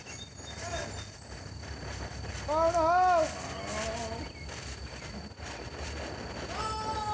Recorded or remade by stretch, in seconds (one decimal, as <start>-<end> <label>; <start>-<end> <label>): 0.0-7.1 recorded